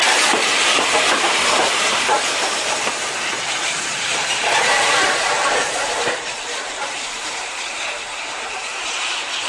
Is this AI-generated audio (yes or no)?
yes